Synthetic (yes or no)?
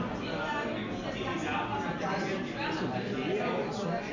no